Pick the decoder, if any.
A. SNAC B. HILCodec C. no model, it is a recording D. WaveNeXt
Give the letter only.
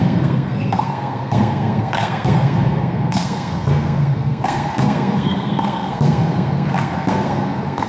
A